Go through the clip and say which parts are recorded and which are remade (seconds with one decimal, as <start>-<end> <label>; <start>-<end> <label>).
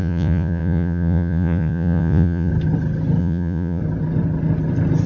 0.0-2.5 remade; 2.5-3.2 recorded; 3.2-3.8 remade; 3.8-5.1 recorded